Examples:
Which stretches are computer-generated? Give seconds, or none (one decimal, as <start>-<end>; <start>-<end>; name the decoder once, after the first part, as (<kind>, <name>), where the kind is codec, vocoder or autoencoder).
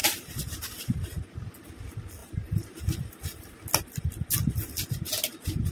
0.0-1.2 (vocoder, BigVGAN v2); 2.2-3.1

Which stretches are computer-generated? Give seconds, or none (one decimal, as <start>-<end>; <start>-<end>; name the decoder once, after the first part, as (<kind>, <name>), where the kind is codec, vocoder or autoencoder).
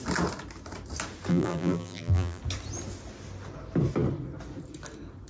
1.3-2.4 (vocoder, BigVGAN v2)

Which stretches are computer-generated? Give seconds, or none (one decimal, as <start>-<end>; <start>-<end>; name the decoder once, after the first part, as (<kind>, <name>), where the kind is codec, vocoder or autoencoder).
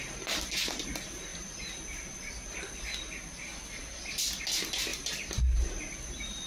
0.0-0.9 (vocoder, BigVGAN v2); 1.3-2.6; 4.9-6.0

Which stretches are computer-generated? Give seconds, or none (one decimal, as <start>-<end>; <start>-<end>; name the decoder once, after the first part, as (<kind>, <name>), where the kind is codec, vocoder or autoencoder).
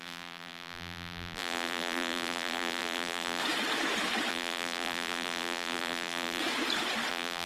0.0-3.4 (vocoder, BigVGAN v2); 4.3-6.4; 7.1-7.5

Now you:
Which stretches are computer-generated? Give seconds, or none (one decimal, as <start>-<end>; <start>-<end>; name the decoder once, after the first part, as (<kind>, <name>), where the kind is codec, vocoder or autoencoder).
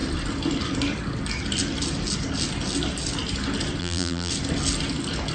3.8-4.3 (vocoder, BigVGAN v2)